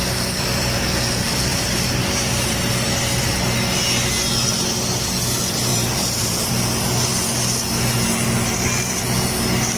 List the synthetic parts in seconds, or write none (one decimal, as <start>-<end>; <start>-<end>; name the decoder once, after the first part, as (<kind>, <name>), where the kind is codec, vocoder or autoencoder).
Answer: 1.5-2.7 (vocoder, BigVGAN v2); 5.7-6.5